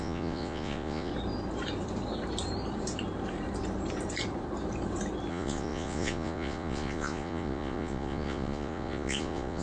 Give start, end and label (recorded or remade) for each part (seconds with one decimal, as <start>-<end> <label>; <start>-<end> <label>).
0.0-1.1 remade; 1.1-5.3 recorded; 5.3-9.6 remade